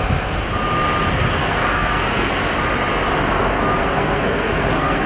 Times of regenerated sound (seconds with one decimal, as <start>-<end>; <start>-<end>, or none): 1.4-2.3; 3.8-5.1